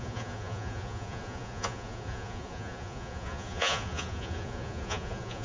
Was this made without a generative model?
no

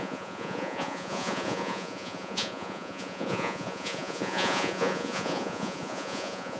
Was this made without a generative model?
no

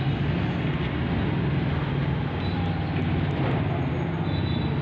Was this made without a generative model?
yes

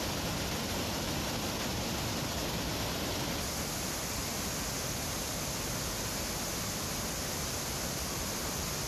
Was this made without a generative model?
yes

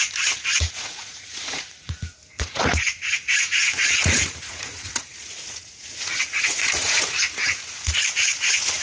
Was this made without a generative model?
no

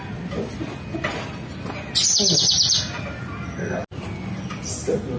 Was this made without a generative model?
yes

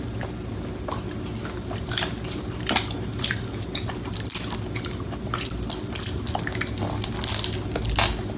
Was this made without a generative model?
yes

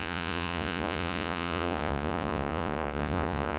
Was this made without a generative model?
no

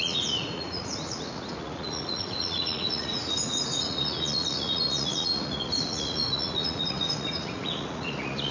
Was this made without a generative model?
no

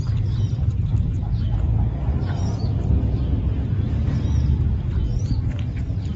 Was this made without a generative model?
yes